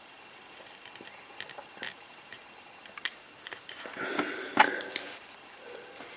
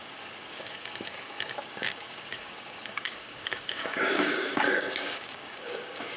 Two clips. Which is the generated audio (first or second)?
second